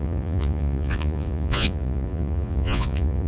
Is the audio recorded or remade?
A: remade